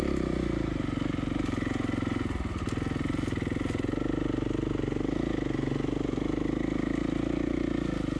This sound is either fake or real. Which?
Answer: real